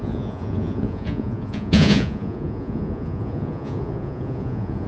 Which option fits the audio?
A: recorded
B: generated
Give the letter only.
B